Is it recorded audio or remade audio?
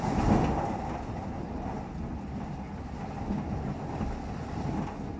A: recorded